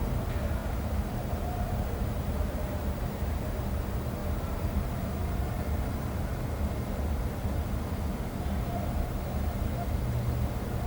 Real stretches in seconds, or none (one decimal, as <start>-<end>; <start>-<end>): 0.0-0.6; 3.3-4.2; 6.2-10.9